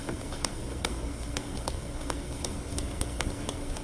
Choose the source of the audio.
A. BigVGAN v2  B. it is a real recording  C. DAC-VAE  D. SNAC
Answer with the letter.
D